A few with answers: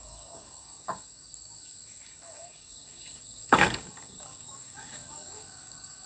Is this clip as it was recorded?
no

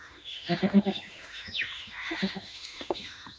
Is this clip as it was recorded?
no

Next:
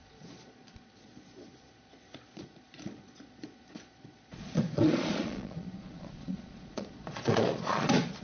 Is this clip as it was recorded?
no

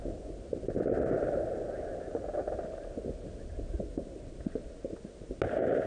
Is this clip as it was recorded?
yes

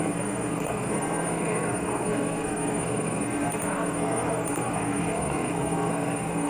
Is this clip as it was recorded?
no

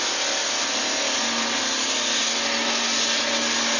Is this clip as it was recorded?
yes